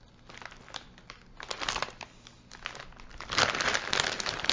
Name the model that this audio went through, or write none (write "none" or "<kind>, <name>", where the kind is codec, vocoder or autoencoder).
none